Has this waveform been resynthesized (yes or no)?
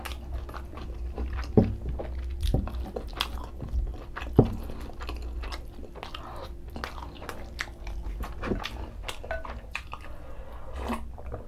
no